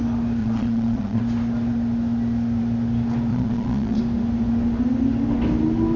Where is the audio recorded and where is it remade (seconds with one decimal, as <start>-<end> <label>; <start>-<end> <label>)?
0.0-0.4 recorded; 0.4-1.2 remade; 1.2-3.3 recorded; 3.3-4.0 remade; 4.0-6.0 recorded